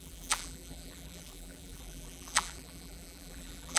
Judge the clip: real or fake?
fake